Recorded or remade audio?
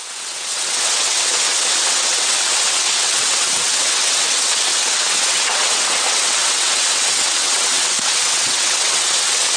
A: remade